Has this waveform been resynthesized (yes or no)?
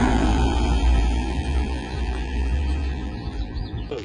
yes